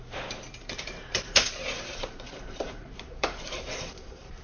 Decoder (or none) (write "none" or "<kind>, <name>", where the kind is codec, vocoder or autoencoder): vocoder, BigVGAN v2